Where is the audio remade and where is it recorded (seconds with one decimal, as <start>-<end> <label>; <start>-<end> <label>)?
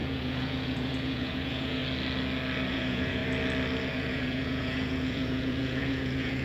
0.0-1.8 remade; 1.8-2.7 recorded; 2.7-3.2 remade; 3.2-3.9 recorded; 3.9-6.4 remade